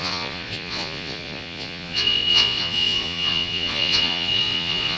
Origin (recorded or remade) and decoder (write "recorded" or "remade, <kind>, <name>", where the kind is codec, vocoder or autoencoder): remade, vocoder, Vocos